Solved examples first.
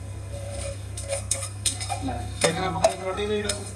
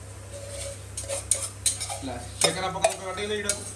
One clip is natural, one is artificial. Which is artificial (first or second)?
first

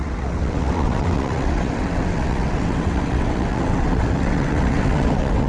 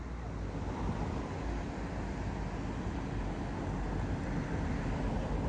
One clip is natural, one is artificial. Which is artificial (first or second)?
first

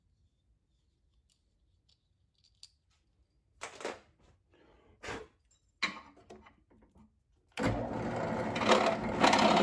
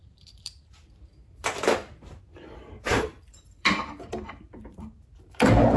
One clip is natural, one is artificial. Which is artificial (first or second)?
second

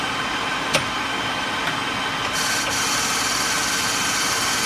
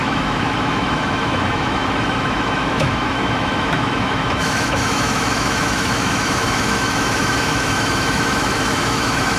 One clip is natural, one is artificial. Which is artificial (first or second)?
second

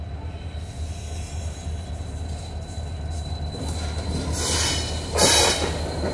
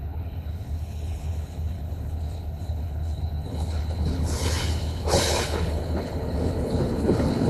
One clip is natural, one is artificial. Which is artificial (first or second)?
second